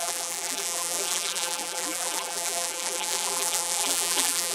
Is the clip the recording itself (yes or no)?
no